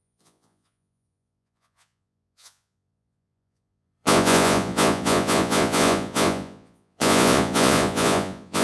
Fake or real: fake